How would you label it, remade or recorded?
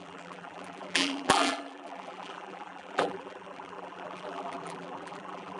remade